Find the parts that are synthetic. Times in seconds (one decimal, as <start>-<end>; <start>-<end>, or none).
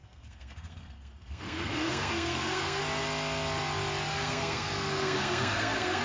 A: 0.0-2.8; 4.1-6.0